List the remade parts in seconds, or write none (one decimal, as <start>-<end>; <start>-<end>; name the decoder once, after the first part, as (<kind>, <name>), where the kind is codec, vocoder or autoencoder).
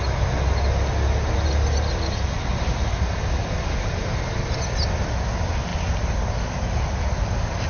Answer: none